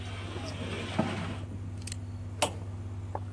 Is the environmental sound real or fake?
real